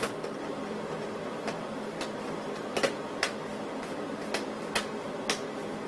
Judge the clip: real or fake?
real